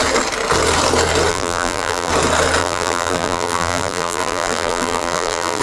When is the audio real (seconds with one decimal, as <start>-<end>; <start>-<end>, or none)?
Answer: 0.0-1.3; 2.1-2.6